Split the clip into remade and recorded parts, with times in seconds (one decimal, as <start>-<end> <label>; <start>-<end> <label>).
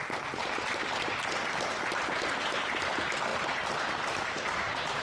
0.0-5.0 recorded